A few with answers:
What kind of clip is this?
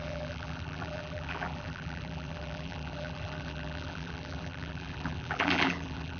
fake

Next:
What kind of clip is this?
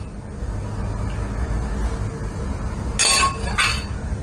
real